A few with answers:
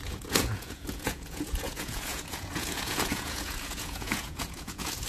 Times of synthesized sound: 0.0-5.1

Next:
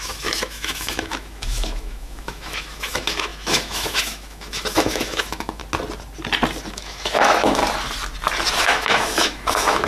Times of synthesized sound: 0.0-5.6; 6.7-7.6; 8.6-9.9

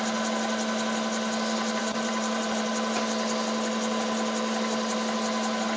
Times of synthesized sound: 1.8-2.7

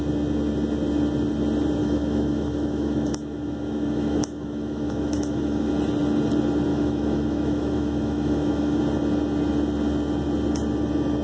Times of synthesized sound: 1.8-5.7; 6.7-8.8